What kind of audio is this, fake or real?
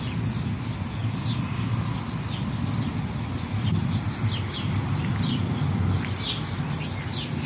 real